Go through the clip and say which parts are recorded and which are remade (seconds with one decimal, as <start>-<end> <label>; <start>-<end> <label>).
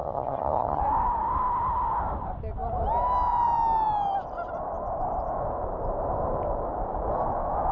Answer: 0.0-0.8 remade; 0.8-7.7 recorded